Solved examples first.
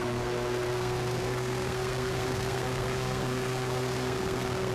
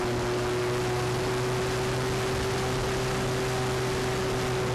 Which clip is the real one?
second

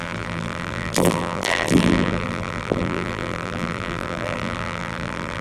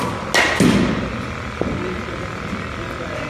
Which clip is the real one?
second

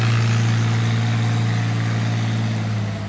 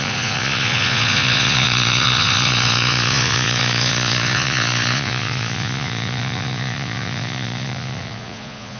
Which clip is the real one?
first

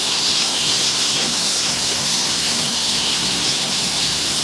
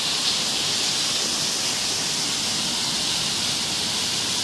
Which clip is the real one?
second